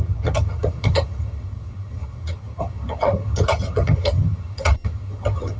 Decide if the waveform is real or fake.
fake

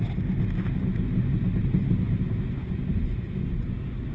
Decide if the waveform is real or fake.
real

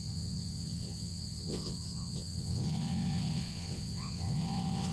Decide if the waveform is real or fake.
fake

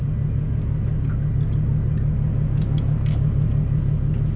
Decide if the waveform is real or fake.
real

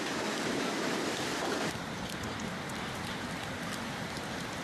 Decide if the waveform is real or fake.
real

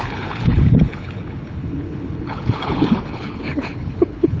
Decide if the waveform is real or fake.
fake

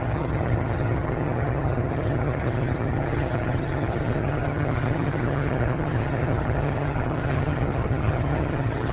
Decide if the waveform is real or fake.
fake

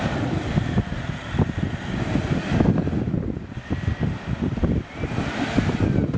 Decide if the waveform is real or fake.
real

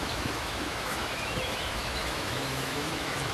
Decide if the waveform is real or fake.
fake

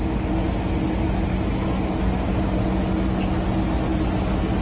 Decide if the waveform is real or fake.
real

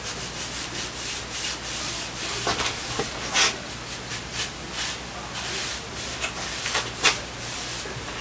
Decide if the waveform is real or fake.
real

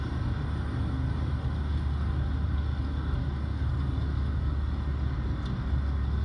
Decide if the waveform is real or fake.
real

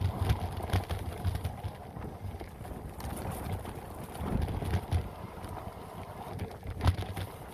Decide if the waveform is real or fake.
real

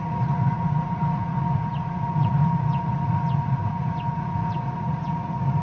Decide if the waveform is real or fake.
fake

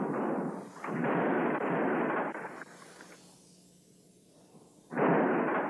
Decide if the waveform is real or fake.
real